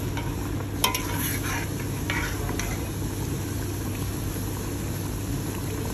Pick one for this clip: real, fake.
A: real